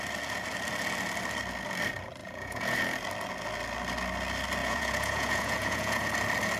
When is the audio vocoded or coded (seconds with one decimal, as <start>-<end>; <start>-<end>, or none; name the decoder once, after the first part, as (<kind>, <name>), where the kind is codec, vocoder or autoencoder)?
2.2-2.8 (vocoder, Vocos); 4.6-6.1

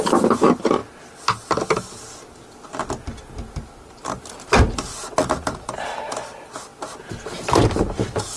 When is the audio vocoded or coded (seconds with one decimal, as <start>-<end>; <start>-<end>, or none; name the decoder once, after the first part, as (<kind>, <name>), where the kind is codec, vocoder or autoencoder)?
none

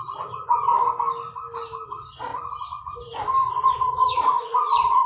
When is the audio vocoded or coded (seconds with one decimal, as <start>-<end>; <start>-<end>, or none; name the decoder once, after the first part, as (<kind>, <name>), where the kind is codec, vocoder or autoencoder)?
1.9-2.3 (vocoder, Vocos); 3.5-5.1

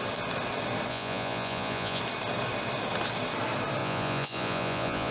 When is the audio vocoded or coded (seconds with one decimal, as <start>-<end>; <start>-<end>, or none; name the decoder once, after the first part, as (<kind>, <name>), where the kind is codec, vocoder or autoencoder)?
0.9-2.0 (vocoder, Vocos); 3.8-5.1